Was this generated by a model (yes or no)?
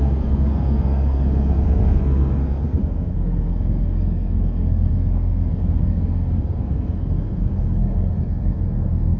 yes